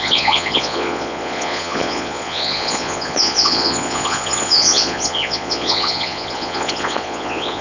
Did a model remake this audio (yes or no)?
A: yes